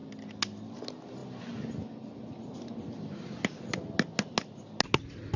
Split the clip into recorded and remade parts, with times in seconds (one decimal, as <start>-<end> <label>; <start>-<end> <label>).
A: 0.0-5.4 recorded